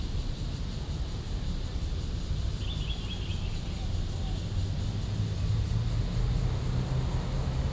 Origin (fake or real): real